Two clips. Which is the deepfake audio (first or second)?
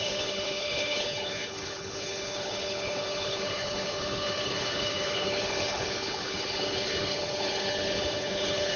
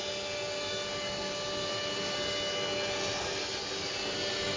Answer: first